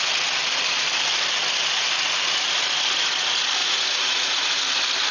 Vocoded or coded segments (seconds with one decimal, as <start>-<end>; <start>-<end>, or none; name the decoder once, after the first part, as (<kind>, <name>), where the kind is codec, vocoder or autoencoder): 3.6-4.6 (vocoder, Vocos)